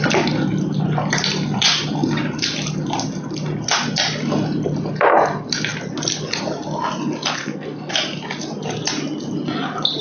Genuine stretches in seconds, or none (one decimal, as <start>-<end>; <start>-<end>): 0.0-7.4; 7.9-10.0